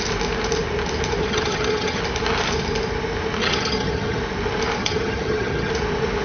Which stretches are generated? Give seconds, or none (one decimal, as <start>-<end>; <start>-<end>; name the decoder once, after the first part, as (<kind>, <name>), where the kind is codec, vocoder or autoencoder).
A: 1.2-2.0 (vocoder, HiFi-GAN); 3.4-4.2; 4.8-5.7